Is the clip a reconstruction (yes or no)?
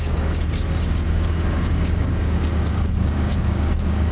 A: yes